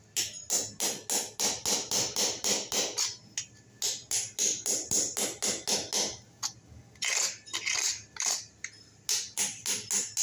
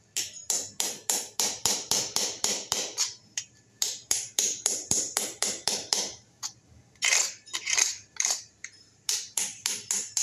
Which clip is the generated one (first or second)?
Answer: second